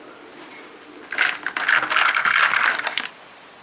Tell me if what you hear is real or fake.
real